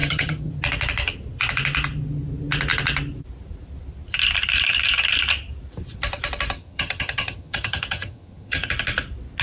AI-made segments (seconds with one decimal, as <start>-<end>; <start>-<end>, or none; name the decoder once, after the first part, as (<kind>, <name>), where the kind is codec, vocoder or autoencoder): 0.0-0.5 (vocoder, HiFi-GAN); 6.6-8.7